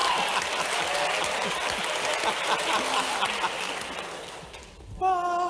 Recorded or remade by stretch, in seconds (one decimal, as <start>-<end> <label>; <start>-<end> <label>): 0.0-5.5 recorded